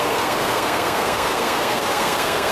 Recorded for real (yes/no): no